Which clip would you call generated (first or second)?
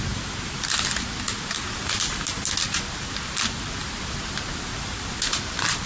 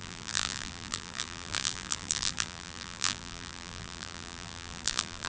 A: second